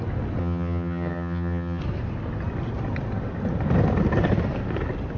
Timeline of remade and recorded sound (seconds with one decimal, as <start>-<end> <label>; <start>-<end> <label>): 0.0-0.4 recorded; 0.4-1.8 remade; 1.8-5.2 recorded